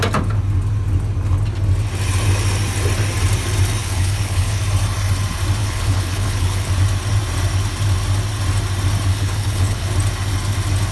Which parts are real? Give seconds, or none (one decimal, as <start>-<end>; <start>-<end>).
0.0-3.8; 4.6-5.6; 6.7-9.1; 9.9-10.9